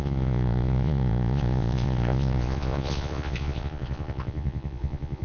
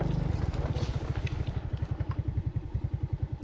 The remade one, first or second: first